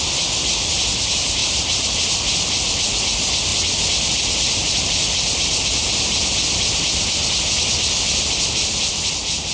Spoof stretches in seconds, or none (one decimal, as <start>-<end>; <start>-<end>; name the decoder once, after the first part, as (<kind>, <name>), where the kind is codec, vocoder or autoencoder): none